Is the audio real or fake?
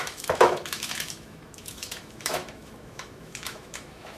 fake